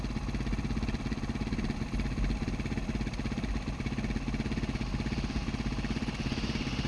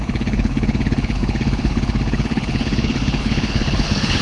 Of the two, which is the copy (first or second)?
second